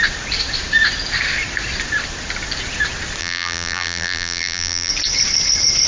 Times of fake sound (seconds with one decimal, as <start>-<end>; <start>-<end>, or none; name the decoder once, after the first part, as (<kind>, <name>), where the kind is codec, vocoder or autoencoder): 3.2-4.9 (vocoder, BigVGAN v2)

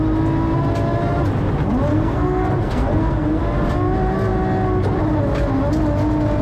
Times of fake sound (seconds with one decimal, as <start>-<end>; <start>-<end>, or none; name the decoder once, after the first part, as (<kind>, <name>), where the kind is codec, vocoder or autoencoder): 1.9-3.4 (codec, SNAC)